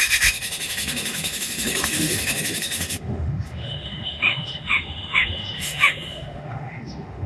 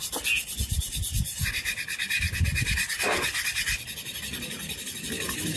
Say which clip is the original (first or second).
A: second